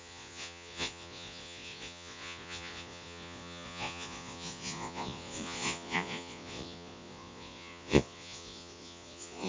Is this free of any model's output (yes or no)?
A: no